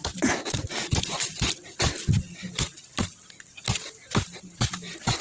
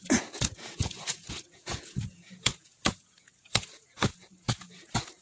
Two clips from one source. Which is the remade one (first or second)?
second